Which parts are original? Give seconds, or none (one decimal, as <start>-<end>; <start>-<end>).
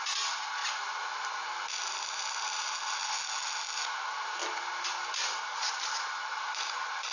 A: 0.0-7.1